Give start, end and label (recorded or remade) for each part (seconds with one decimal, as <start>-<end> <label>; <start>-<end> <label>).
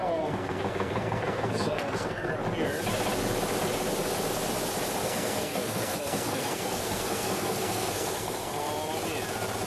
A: 0.0-2.3 remade; 2.3-5.0 recorded; 5.0-8.7 remade; 8.7-9.7 recorded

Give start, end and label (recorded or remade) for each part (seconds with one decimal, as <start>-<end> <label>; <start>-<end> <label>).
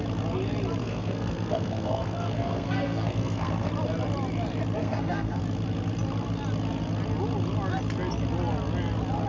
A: 0.0-0.8 recorded; 0.8-3.7 remade; 3.7-4.8 recorded; 4.8-5.4 remade; 5.4-9.3 recorded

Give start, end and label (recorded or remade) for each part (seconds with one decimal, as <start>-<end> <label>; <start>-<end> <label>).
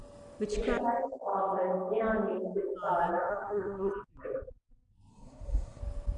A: 0.0-3.3 recorded; 3.3-3.9 remade; 3.9-5.1 recorded; 5.1-5.8 remade; 5.8-6.2 recorded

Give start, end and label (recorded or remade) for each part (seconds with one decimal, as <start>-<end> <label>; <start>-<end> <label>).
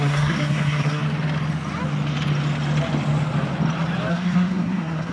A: 0.0-1.0 remade; 1.0-4.1 recorded; 4.1-5.1 remade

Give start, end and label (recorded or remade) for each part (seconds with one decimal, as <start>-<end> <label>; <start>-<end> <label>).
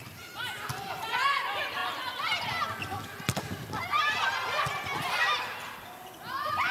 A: 0.0-6.7 recorded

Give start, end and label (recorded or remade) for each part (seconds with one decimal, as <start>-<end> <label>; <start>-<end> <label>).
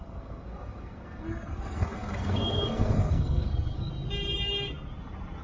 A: 0.0-3.9 remade; 3.9-5.4 recorded